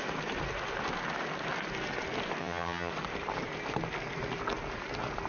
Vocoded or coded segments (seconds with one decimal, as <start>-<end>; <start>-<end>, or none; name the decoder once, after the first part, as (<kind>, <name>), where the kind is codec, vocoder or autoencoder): 2.4-2.9 (vocoder, HiFi-GAN)